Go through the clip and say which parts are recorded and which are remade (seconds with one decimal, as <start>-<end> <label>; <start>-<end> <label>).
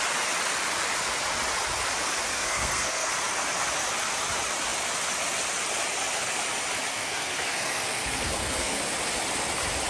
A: 0.0-2.3 recorded; 2.3-3.1 remade; 3.1-6.9 recorded; 6.9-8.8 remade; 8.8-9.9 recorded